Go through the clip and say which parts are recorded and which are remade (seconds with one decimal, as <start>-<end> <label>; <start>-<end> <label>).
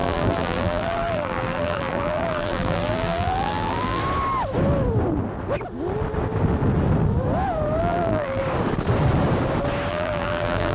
0.0-4.0 remade; 4.0-7.8 recorded; 7.8-8.4 remade; 8.4-9.9 recorded; 9.9-10.7 remade